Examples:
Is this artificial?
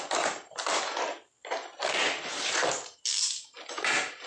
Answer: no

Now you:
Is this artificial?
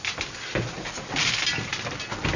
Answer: no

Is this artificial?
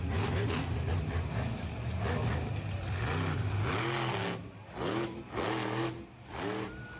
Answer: no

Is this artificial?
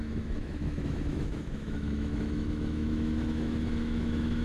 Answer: yes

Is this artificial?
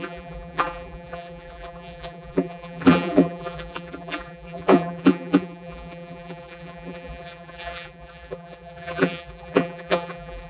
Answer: yes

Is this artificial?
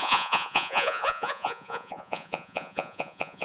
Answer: yes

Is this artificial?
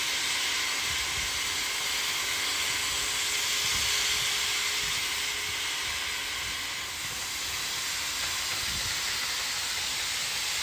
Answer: no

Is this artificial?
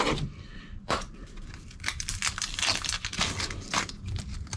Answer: yes